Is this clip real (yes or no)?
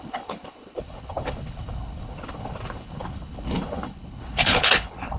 no